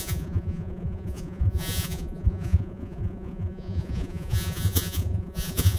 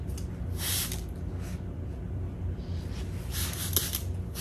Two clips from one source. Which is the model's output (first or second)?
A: first